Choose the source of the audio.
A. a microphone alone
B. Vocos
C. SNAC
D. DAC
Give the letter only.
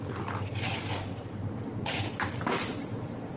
A